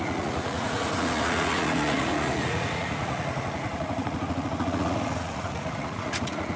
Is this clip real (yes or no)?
no